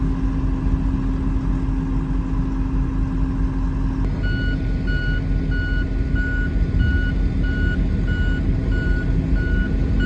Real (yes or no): yes